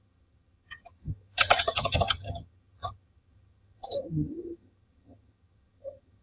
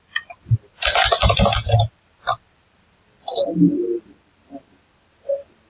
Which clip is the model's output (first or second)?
first